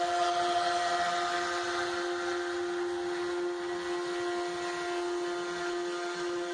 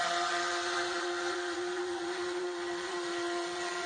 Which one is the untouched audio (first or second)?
first